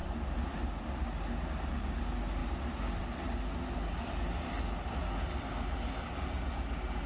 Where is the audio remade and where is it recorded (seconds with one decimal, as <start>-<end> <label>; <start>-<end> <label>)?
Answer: 0.0-2.4 recorded; 2.4-3.0 remade; 3.0-7.1 recorded